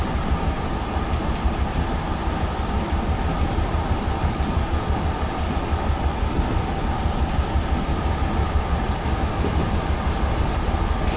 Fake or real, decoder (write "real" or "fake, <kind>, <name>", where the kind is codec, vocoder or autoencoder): real